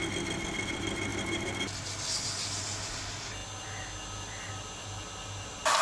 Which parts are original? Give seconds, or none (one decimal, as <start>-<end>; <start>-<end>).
0.0-5.8